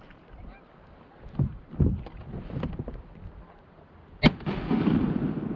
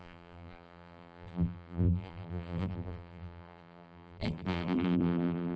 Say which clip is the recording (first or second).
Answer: first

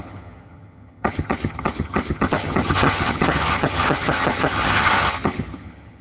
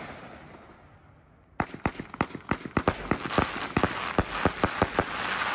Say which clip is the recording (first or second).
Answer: second